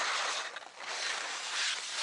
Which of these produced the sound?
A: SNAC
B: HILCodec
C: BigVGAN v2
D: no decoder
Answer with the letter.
D